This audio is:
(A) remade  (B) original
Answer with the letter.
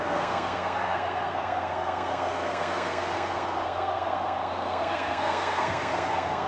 A